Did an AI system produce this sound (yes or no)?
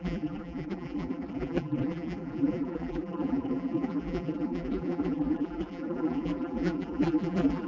yes